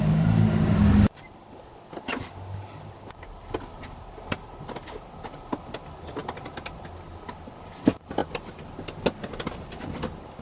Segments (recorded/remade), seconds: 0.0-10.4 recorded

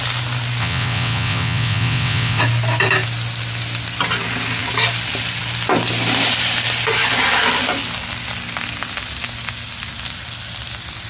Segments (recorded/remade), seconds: 0.0-0.6 recorded; 0.6-2.4 remade; 2.4-11.1 recorded

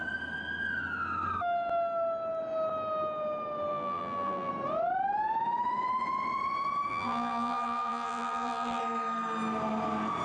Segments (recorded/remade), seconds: 0.0-3.7 recorded; 3.7-4.5 remade; 4.5-6.9 recorded; 6.9-8.8 remade; 8.8-10.2 recorded

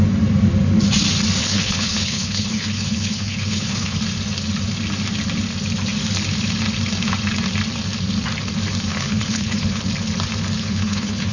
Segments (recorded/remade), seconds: 0.0-1.4 recorded; 1.4-4.0 remade; 4.0-8.9 recorded; 8.9-9.8 remade; 9.8-10.6 recorded; 10.6-11.3 remade